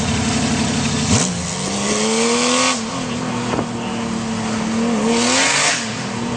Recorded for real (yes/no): yes